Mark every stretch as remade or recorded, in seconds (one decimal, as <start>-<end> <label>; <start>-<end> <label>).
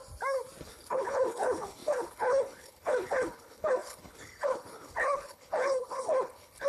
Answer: 0.0-0.6 recorded; 0.6-6.7 remade